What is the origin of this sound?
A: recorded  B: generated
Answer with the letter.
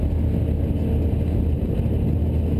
A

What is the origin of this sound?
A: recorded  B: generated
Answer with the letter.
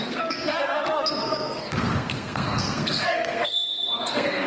B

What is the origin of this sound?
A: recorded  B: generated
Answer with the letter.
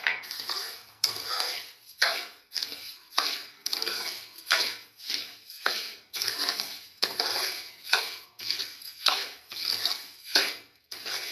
B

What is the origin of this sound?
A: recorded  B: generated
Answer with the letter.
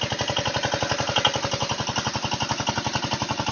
A